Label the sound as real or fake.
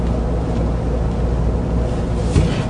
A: real